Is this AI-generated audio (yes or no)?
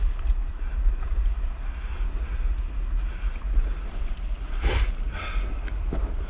no